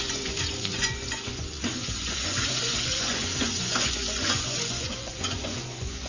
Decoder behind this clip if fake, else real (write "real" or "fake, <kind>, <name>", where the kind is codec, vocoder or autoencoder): fake, vocoder, Vocos